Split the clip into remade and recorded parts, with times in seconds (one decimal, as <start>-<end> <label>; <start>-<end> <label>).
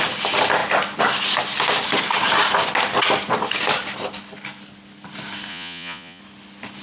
0.0-5.5 recorded; 5.5-6.2 remade; 6.2-6.8 recorded